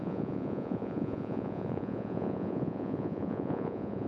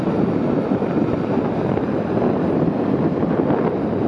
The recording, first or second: second